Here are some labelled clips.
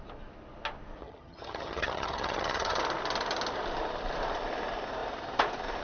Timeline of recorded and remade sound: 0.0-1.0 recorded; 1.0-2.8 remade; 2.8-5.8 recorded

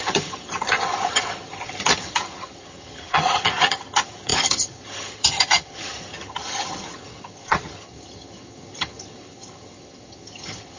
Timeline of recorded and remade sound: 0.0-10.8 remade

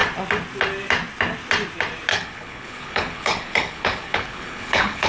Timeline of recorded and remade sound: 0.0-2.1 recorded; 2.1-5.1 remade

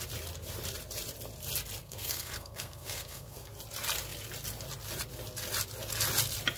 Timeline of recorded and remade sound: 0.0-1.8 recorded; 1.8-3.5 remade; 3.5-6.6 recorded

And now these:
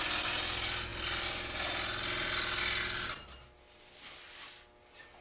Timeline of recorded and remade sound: 0.0-5.2 recorded